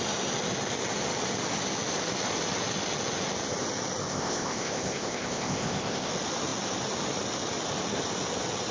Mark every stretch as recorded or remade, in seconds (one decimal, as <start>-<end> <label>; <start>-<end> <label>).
0.0-4.0 recorded; 4.0-6.1 remade; 6.1-8.7 recorded